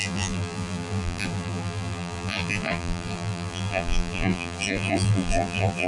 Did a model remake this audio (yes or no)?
yes